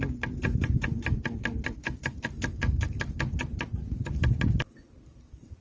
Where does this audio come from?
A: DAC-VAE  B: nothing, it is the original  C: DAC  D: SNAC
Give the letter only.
B